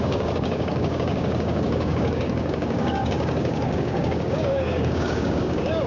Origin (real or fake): fake